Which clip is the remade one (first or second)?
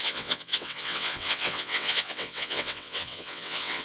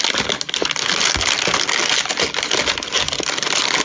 first